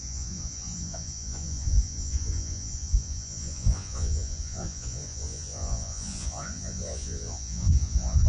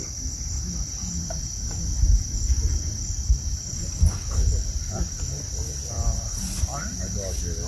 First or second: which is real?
second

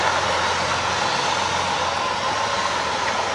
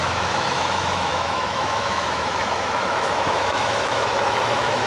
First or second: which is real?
first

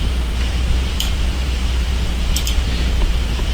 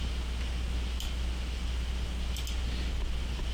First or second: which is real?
second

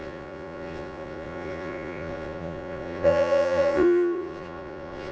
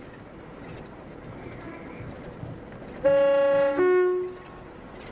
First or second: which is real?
second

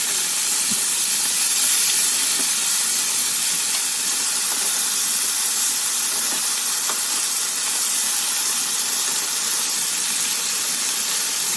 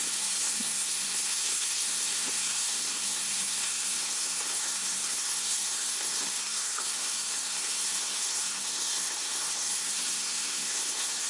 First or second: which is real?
first